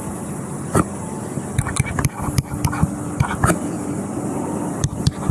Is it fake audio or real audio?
real